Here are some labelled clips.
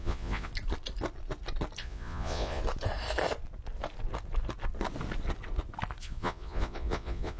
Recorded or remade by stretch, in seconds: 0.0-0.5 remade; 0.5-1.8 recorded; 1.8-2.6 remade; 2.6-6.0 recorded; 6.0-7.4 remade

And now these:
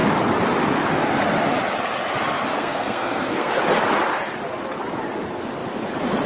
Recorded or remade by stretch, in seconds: 0.0-2.5 recorded; 2.5-3.5 remade; 3.5-6.3 recorded

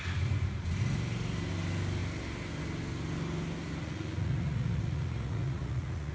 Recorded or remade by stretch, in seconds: 0.0-3.8 recorded; 3.8-6.1 remade

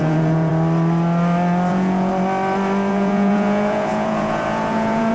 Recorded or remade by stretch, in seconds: 0.0-0.5 remade; 0.5-1.7 recorded; 1.7-2.1 remade; 2.1-2.9 recorded; 2.9-5.1 remade

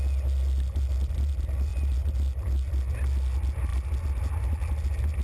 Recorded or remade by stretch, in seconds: 0.0-5.2 recorded

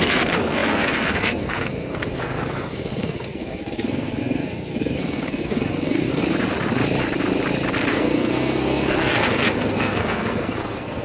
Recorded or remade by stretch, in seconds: 0.0-6.2 remade; 6.2-7.9 recorded; 7.9-11.0 remade

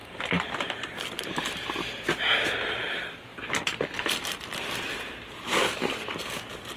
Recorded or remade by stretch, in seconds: 0.0-1.3 remade; 1.3-3.3 recorded; 3.3-6.2 remade; 6.2-6.8 recorded